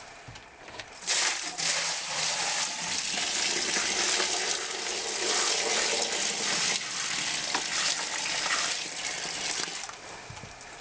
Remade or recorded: recorded